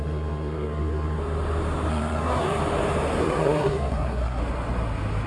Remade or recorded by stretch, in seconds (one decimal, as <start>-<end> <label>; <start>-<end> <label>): 0.0-1.2 remade; 1.2-1.9 recorded; 1.9-2.6 remade; 2.6-3.2 recorded; 3.2-4.4 remade; 4.4-5.3 recorded